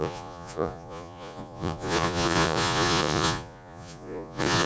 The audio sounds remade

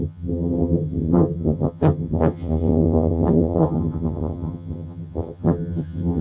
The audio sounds remade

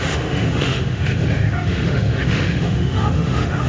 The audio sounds remade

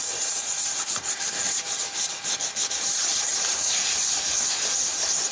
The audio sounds remade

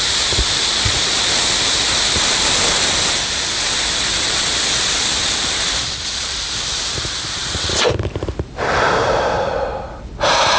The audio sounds recorded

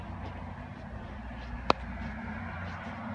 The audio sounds recorded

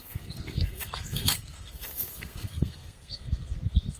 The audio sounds remade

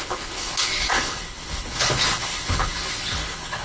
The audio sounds remade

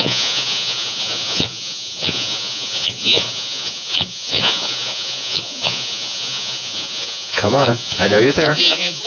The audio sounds remade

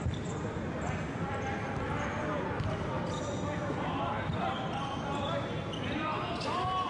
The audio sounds recorded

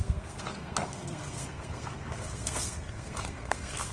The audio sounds remade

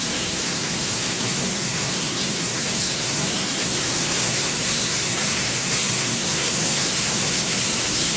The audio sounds remade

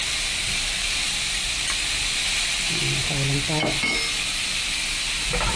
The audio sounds recorded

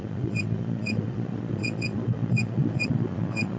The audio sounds remade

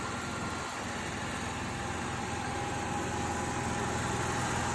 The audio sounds recorded